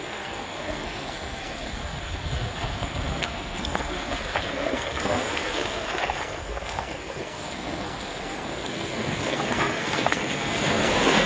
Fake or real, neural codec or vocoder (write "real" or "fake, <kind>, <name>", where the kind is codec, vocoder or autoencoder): fake, codec, SNAC